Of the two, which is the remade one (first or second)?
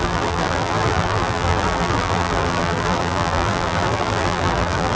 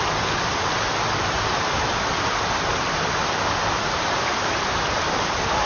first